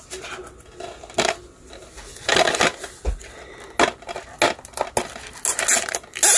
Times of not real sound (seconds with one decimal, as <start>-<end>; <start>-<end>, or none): none